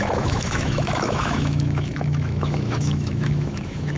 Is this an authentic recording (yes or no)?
no